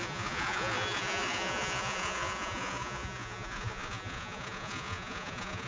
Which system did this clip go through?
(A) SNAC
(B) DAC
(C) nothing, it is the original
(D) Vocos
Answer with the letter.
D